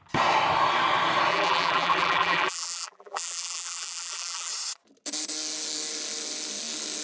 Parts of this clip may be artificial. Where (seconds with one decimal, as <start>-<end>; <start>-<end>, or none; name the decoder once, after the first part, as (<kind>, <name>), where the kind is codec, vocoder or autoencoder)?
1.3-4.5 (vocoder, BigVGAN v2)